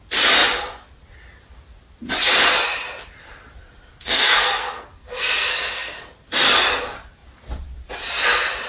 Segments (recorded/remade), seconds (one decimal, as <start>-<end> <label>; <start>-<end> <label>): 0.0-3.9 recorded; 3.9-6.0 remade; 6.0-8.7 recorded